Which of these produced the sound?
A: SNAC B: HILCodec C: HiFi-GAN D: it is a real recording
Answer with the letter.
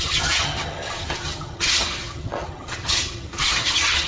C